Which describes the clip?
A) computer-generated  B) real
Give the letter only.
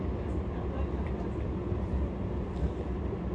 B